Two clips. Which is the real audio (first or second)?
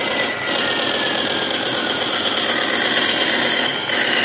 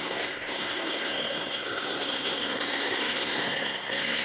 first